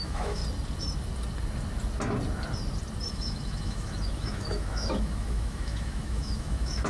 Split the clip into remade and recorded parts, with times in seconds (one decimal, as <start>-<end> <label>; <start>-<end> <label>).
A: 0.0-0.4 remade; 0.4-3.1 recorded; 3.1-6.9 remade